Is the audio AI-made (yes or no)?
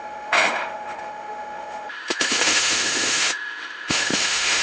yes